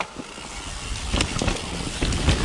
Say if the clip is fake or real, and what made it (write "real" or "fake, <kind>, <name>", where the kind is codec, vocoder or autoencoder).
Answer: real